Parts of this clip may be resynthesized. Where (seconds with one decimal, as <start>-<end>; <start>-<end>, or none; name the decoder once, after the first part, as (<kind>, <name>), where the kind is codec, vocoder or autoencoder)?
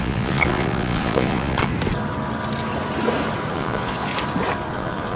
0.0-1.7 (vocoder, Vocos); 3.5-4.1; 4.7-5.2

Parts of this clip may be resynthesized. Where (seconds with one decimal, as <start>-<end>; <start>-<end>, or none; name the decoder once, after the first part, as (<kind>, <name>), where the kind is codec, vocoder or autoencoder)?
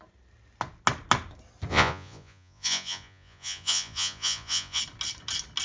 1.7-4.8 (vocoder, Vocos)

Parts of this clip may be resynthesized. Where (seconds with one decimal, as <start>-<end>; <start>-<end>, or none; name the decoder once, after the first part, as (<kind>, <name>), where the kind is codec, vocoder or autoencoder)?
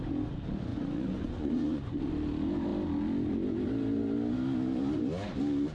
0.7-2.1 (vocoder, Vocos)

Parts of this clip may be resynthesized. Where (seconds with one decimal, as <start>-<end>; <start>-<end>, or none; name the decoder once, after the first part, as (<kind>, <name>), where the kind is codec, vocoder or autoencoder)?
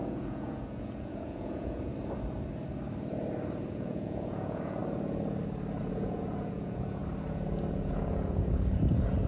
0.0-1.9 (vocoder, Vocos); 3.7-4.8; 5.8-7.0; 7.7-9.3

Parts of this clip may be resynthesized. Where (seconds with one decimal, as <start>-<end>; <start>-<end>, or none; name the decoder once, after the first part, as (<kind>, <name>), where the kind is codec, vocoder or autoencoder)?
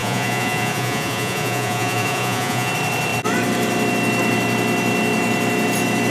0.0-2.7 (vocoder, Vocos)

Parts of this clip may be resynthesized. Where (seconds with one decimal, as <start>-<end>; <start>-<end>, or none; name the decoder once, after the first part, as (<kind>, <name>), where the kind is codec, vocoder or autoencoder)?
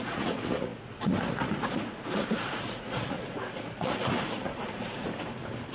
0.0-5.1 (vocoder, Vocos)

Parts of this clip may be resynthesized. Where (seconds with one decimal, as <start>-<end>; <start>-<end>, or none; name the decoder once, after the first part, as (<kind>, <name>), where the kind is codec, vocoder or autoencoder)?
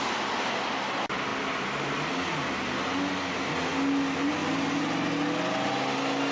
none